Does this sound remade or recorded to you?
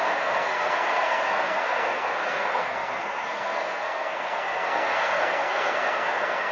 remade